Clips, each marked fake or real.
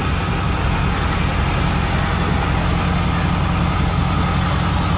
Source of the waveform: real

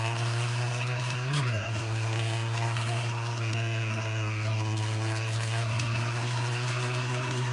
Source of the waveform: fake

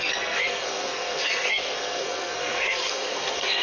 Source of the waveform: fake